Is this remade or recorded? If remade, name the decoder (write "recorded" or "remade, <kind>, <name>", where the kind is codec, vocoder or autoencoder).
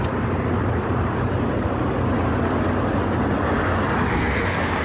recorded